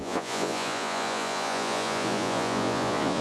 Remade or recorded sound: remade